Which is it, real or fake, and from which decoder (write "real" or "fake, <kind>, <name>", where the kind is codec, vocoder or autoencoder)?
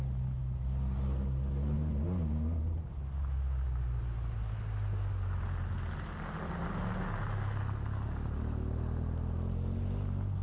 real